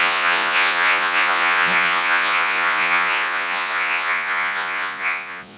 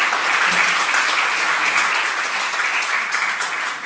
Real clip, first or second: second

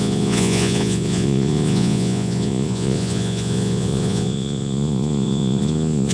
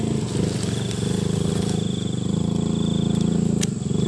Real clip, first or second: second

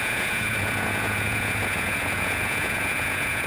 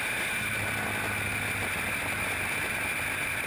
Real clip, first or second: second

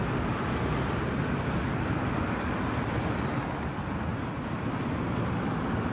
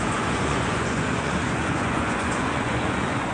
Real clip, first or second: first